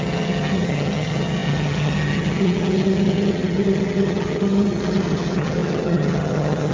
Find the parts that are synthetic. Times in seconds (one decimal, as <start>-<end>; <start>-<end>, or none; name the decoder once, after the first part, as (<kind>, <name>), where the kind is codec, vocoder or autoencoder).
0.0-6.7 (vocoder, HiFi-GAN)